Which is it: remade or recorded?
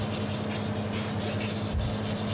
recorded